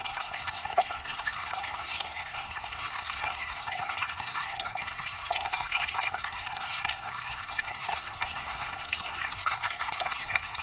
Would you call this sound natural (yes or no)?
no